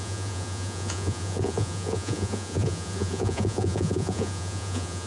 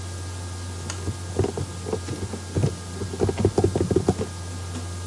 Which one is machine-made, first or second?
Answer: first